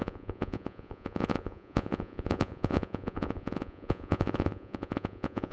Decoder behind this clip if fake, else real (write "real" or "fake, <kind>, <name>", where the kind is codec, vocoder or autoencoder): fake, vocoder, Vocos